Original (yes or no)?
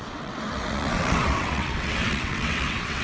no